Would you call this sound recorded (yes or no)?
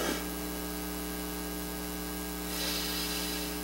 yes